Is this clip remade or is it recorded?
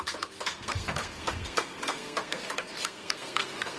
remade